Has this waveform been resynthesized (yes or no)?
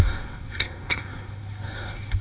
yes